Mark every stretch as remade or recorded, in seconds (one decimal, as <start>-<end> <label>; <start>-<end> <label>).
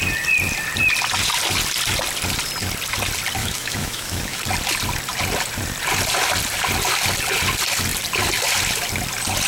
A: 0.0-3.4 recorded; 3.4-4.4 remade; 4.4-9.5 recorded